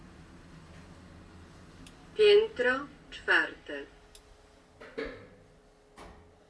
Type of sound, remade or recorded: recorded